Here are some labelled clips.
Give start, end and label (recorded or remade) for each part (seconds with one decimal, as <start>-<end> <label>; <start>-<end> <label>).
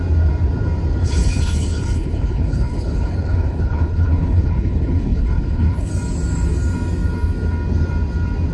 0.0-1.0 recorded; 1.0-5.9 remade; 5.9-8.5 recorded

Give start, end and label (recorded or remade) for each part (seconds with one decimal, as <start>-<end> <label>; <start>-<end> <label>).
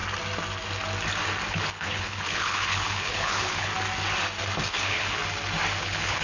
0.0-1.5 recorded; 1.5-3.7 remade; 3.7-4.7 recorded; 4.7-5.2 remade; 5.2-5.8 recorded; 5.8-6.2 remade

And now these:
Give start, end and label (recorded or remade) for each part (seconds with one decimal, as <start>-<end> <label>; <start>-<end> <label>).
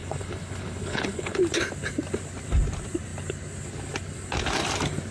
0.0-1.4 remade; 1.4-5.1 recorded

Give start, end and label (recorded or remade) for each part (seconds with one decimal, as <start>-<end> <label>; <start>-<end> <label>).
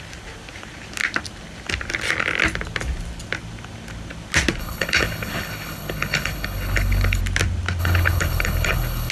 0.0-4.6 recorded; 4.6-7.2 remade; 7.2-7.8 recorded; 7.8-9.1 remade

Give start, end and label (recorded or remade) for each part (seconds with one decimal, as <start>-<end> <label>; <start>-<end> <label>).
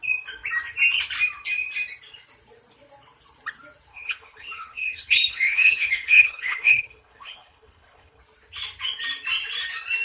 0.0-3.9 recorded; 3.9-8.2 remade; 8.2-10.0 recorded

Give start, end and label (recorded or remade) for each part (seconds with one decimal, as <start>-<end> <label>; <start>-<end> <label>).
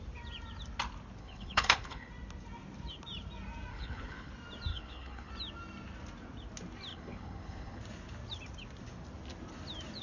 0.0-1.2 recorded; 1.2-2.1 remade; 2.1-3.7 recorded; 3.7-4.3 remade; 4.3-4.7 recorded; 4.7-5.3 remade; 5.3-6.9 recorded; 6.9-7.8 remade; 7.8-10.0 recorded